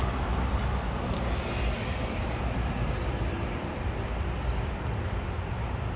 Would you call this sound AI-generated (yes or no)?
yes